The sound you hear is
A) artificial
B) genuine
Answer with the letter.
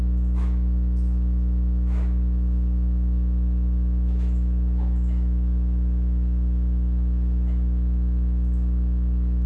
A